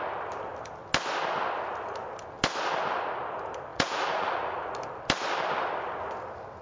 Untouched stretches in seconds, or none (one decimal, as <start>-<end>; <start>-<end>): 0.0-3.7; 4.7-6.6